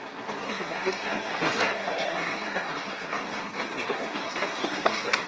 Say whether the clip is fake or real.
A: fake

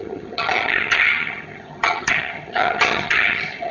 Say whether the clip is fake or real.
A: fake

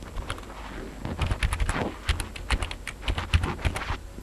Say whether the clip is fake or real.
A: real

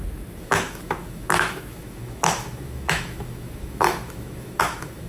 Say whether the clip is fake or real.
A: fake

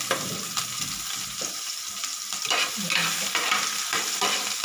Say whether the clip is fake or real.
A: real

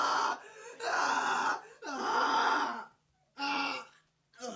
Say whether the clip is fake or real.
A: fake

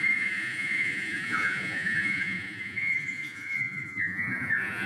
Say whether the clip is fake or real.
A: fake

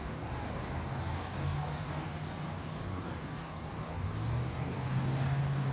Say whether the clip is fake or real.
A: fake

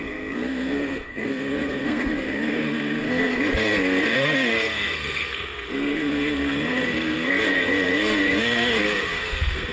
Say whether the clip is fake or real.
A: fake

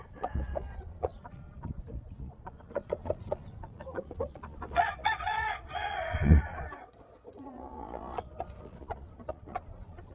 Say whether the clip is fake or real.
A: fake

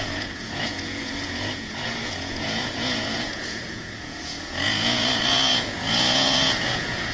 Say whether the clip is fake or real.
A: fake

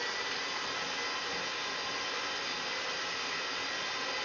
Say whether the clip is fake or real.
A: real